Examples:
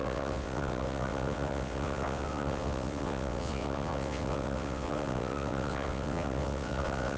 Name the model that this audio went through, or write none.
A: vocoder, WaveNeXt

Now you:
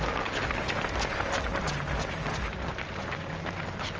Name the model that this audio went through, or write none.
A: none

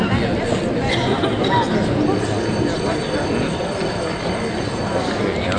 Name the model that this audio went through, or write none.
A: none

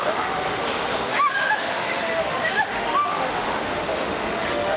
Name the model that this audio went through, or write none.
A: autoencoder, DAC-VAE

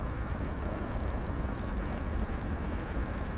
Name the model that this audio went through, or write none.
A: autoencoder, DAC-VAE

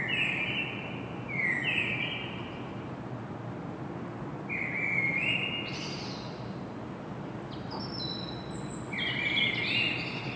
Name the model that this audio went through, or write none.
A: none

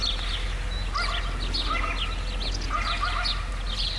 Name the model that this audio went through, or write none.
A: none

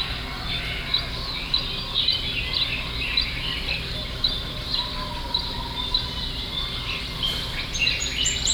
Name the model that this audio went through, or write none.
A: none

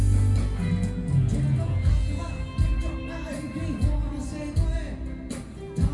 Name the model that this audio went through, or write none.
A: none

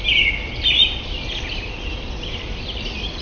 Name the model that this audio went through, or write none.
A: vocoder, BigVGAN v2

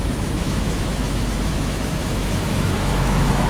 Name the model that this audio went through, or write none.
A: autoencoder, DAC-VAE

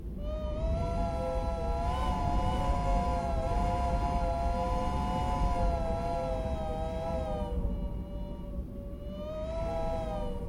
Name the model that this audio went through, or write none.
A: none